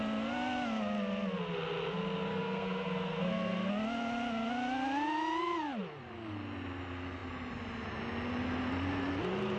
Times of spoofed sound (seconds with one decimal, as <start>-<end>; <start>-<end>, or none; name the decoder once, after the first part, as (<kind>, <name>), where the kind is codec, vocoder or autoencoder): 2.3-3.7 (codec, SNAC)